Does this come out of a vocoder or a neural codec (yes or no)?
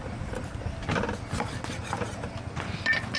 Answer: no